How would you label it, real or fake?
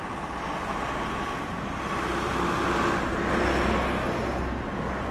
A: real